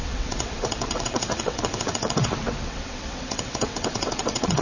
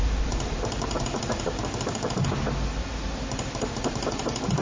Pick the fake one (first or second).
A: first